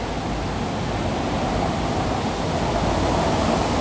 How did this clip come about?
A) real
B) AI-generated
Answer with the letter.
A